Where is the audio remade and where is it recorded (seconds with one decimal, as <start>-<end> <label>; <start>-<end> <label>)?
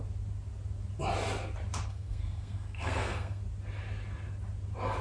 0.0-1.9 recorded; 1.9-3.4 remade; 3.4-5.0 recorded